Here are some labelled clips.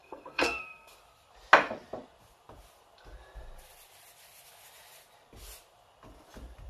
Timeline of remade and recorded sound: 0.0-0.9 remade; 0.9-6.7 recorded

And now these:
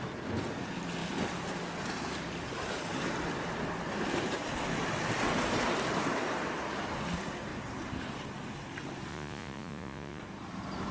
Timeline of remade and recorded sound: 0.0-9.1 recorded; 9.1-10.2 remade; 10.2-10.9 recorded

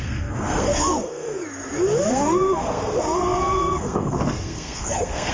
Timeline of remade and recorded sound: 0.0-1.4 remade; 1.4-2.1 recorded; 2.1-5.3 remade

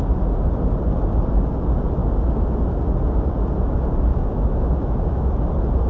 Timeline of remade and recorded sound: 0.0-4.1 recorded; 4.1-5.4 remade; 5.4-5.9 recorded

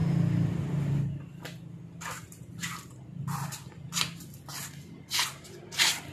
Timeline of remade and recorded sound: 0.0-6.1 recorded